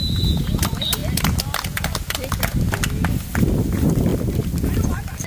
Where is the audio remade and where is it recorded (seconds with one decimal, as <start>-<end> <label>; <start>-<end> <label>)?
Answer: 0.0-1.0 remade; 1.0-3.4 recorded; 3.4-5.3 remade